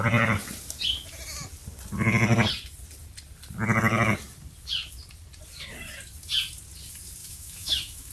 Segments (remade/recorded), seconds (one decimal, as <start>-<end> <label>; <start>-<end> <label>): 0.0-7.2 recorded; 7.2-8.1 remade